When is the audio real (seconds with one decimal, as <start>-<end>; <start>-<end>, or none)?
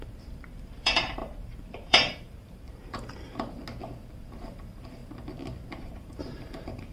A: 3.6-4.2; 5.0-5.8